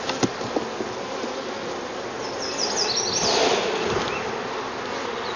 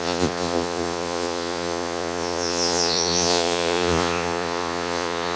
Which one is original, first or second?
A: first